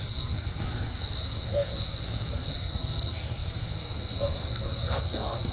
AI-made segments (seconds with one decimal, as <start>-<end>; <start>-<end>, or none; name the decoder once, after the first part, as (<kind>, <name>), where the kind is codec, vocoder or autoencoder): 0.0-5.5 (codec, SNAC)